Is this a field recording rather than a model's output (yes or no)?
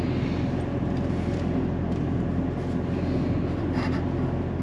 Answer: yes